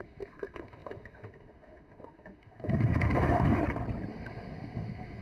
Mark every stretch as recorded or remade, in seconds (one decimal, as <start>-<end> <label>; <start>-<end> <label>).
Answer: 0.0-3.6 remade; 3.6-4.1 recorded; 4.1-5.2 remade